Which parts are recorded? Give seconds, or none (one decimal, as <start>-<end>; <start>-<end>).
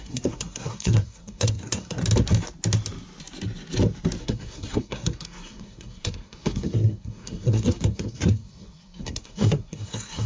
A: 2.0-4.2